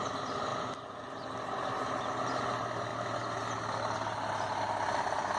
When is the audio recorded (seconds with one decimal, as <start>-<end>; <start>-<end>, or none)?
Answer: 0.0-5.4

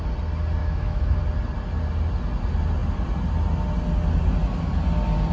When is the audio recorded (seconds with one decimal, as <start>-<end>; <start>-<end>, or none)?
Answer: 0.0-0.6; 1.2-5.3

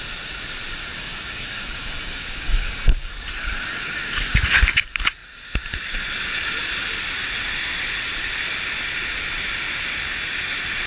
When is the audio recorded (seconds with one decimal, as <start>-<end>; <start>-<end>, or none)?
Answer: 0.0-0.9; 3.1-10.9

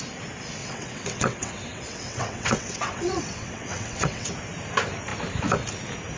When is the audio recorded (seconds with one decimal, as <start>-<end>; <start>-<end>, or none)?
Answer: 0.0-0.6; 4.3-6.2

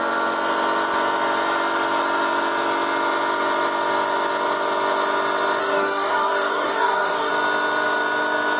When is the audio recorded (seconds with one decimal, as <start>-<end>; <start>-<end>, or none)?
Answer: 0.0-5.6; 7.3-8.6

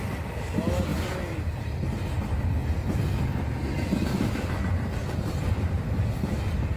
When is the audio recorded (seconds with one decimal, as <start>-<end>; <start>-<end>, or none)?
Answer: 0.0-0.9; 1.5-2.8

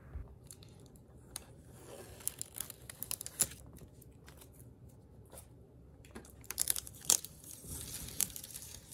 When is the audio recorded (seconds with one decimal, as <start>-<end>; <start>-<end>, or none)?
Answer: 1.8-5.3; 7.7-8.2

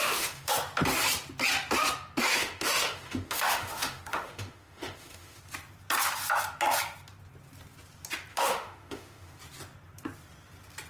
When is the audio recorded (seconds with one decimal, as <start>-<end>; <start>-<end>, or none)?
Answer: 0.5-2.3; 5.4-8.3; 9.4-10.9